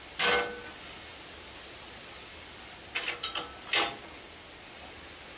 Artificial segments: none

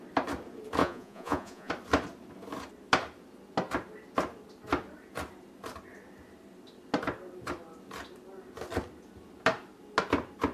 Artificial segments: 0.8-1.7 (vocoder, Vocos)

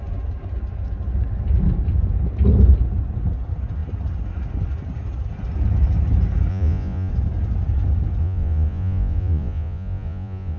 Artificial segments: 6.5-7.1 (vocoder, Vocos); 8.2-10.6